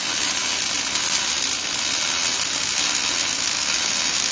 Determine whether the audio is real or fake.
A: real